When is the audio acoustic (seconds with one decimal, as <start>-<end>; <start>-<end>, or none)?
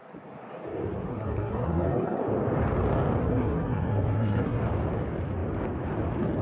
0.0-1.1; 2.2-3.2; 4.6-6.4